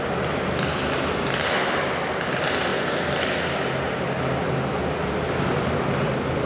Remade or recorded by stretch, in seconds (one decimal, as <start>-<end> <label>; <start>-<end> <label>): 0.0-6.5 recorded